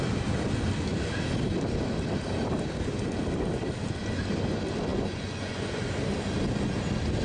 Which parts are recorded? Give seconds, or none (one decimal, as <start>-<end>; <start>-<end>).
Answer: 0.0-4.9; 5.8-7.2